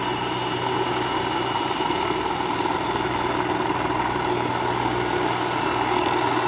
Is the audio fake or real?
real